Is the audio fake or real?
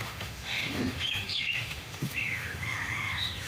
fake